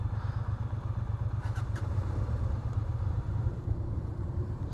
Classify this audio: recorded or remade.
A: remade